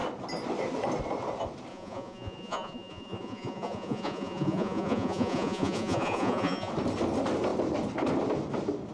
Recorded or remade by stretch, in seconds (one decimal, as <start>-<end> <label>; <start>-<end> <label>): 0.0-1.7 recorded; 1.7-6.7 remade; 6.7-8.9 recorded